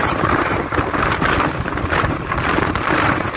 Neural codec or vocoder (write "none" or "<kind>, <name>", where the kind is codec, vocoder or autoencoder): vocoder, BigVGAN v2